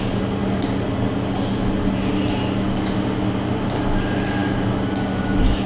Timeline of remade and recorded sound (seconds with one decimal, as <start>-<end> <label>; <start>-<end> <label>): 0.0-5.7 recorded